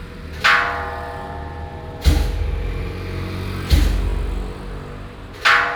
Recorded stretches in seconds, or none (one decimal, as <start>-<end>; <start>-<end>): 0.0-5.8